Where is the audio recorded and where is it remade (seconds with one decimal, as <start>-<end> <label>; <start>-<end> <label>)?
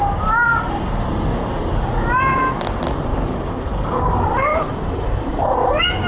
0.0-4.5 recorded; 4.5-5.4 remade; 5.4-6.1 recorded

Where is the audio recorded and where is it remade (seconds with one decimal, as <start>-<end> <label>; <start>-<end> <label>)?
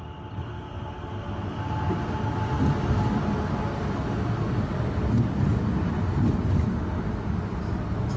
0.0-8.2 recorded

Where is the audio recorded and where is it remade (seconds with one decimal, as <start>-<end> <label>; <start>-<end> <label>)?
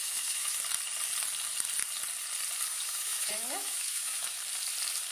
0.0-0.6 remade; 0.6-2.7 recorded; 2.7-4.4 remade; 4.4-5.1 recorded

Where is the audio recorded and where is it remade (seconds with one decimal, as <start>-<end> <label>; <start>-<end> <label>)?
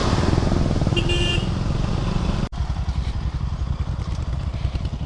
0.0-5.1 recorded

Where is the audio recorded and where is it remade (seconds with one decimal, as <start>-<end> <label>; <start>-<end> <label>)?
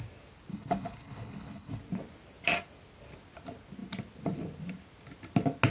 0.0-0.5 recorded; 0.5-1.8 remade; 1.8-5.7 recorded